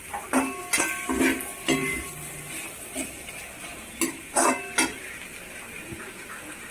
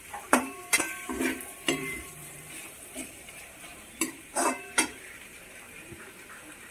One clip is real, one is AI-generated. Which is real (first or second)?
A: first